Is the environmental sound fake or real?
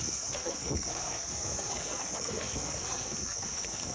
fake